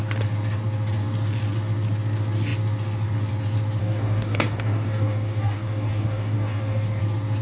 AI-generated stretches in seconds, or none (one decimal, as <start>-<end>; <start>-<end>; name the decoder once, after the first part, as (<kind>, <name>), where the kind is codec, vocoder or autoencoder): 3.8-7.0 (codec, DAC)